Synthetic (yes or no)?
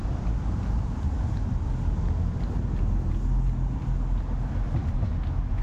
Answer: no